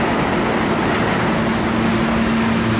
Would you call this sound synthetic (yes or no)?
no